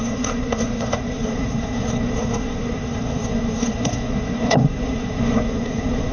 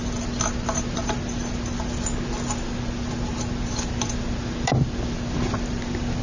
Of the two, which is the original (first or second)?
second